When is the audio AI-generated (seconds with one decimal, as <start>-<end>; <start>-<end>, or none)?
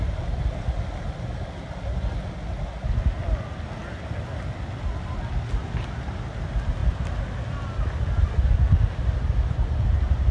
none